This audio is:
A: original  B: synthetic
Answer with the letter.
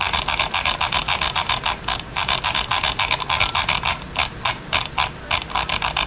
A